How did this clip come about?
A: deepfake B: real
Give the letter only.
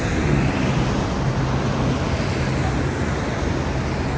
B